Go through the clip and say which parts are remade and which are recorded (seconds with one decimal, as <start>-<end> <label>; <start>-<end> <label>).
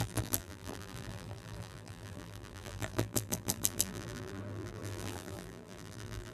0.0-6.3 remade